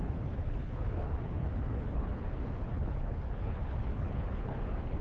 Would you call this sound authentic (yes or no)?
no